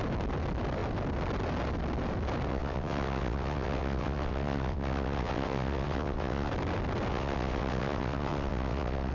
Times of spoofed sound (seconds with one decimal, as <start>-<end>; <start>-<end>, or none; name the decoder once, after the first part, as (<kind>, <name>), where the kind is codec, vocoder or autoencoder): 2.5-6.5 (vocoder, WaveNeXt); 7.1-9.1